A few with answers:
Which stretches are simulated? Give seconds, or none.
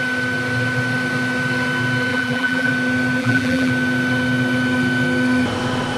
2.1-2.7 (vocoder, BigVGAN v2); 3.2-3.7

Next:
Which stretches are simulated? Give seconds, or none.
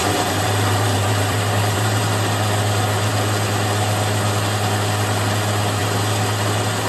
0.0-2.0 (vocoder, BigVGAN v2)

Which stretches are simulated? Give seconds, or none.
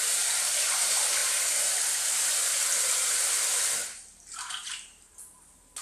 none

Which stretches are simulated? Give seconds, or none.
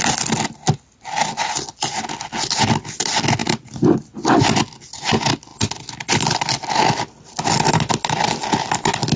3.4-4.0 (vocoder, BigVGAN v2)